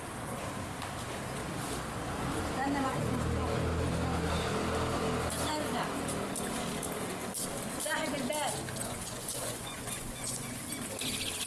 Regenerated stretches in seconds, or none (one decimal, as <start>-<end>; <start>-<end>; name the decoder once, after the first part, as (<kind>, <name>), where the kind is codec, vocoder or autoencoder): 8.8-10.6 (vocoder, Vocos)